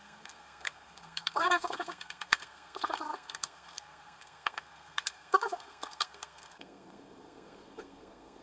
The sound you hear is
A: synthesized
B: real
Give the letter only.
A